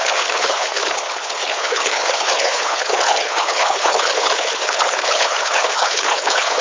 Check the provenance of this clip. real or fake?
fake